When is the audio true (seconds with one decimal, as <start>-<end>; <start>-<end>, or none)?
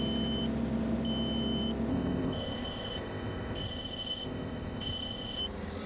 0.0-1.9; 5.4-5.9